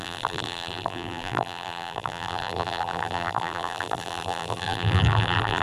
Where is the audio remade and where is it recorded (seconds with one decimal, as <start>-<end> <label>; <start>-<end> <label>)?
0.0-5.6 remade